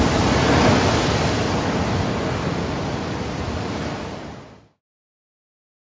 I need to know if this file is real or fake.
real